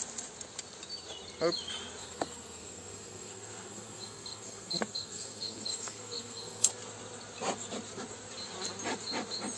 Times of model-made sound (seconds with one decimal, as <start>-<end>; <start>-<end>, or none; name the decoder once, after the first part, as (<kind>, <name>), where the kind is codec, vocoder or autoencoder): 2.0-6.7 (codec, SNAC)